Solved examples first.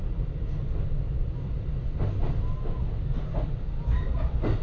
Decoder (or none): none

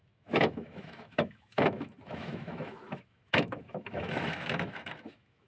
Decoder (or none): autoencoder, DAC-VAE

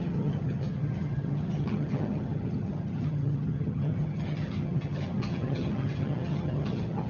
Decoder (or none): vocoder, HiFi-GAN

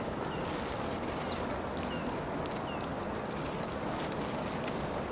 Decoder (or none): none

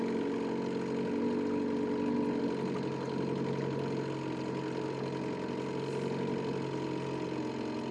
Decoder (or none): none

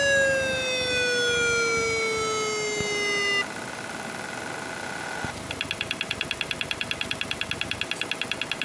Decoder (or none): none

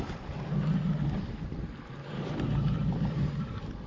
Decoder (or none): none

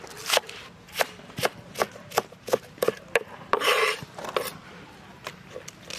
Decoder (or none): none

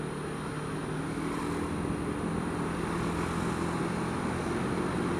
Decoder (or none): none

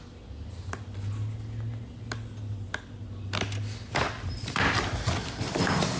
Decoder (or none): none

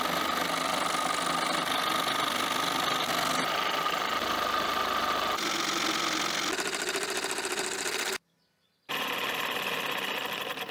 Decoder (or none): none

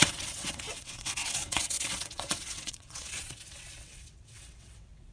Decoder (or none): vocoder, WaveNeXt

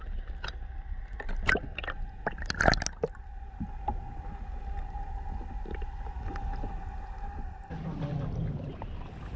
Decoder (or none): none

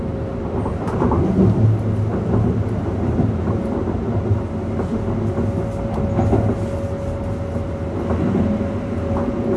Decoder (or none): none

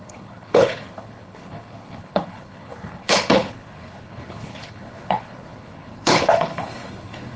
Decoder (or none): codec, HILCodec